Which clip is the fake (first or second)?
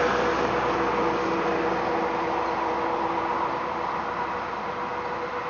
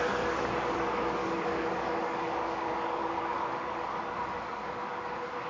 second